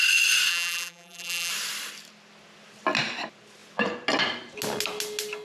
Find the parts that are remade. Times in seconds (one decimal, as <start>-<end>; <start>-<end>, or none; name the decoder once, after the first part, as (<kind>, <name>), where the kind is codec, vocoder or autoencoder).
0.5-1.5 (vocoder, BigVGAN v2)